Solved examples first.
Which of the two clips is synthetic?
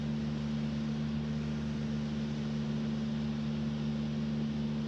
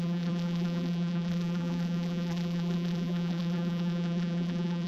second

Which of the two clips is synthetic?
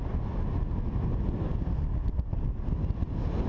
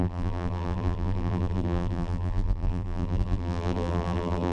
second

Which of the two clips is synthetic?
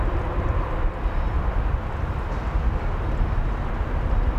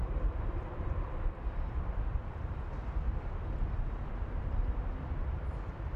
second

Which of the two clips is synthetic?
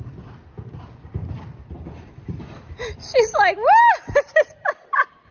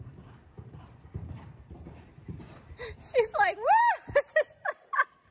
second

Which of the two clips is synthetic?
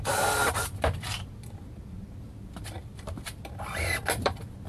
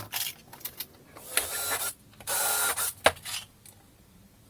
first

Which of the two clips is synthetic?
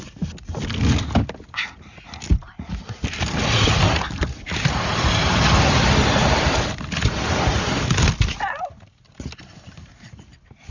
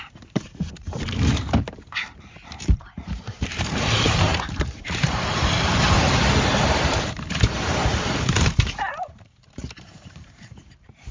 second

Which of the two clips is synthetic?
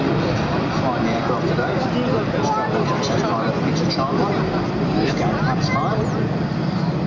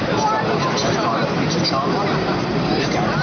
second